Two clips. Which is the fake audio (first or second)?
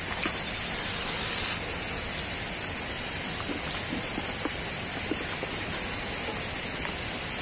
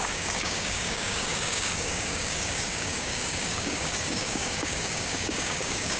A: second